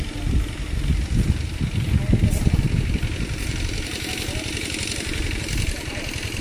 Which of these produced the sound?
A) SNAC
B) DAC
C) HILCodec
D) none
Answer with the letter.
D